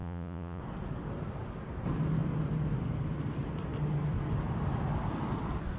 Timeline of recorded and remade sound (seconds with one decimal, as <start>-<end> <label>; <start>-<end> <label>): 0.0-0.6 remade; 0.6-5.8 recorded

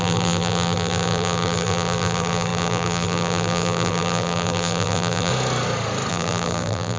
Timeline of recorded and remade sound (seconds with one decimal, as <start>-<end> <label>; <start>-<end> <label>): 0.0-5.3 remade; 5.3-6.1 recorded; 6.1-7.0 remade

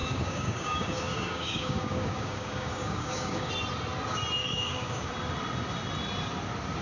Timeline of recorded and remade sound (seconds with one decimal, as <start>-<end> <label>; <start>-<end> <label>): 0.0-3.5 remade; 3.5-4.4 recorded; 4.4-5.1 remade; 5.1-6.8 recorded

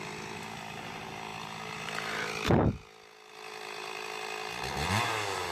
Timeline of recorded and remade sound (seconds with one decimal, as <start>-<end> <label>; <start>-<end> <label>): 0.0-5.5 recorded